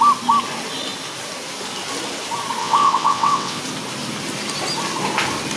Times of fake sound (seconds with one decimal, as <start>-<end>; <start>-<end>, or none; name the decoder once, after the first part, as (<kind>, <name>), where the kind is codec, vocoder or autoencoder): 2.6-3.6 (vocoder, WaveNeXt)

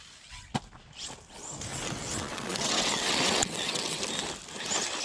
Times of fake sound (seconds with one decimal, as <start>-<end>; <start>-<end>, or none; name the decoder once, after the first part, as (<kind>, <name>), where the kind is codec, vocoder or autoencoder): 1.7-4.0 (vocoder, WaveNeXt)

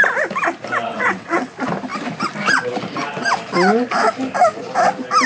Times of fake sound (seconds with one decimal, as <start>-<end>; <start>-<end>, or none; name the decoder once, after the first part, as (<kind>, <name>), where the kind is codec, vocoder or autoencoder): 0.9-1.5 (vocoder, WaveNeXt)